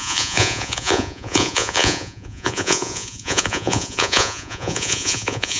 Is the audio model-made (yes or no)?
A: yes